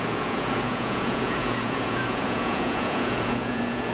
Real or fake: fake